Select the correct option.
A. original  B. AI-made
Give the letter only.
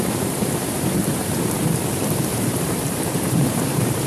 B